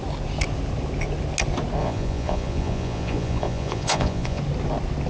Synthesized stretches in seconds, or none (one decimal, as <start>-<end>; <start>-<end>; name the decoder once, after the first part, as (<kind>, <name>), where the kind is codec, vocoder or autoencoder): 1.8-4.4 (vocoder, Vocos)